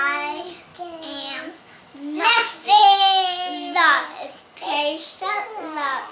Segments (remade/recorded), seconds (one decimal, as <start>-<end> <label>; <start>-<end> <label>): 0.0-0.7 recorded; 0.7-4.4 remade; 4.4-6.1 recorded